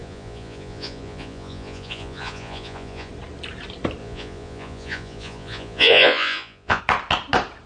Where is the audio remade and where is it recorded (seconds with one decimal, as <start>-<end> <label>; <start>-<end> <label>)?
0.0-3.1 remade; 3.1-4.0 recorded; 4.0-6.8 remade; 6.8-7.7 recorded